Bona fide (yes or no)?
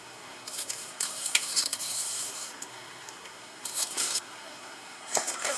no